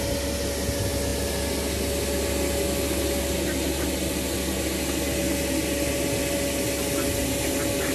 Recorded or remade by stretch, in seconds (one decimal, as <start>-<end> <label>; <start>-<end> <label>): 0.0-7.9 recorded